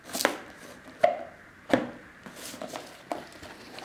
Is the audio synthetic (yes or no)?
no